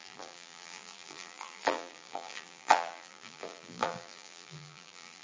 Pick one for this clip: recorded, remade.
remade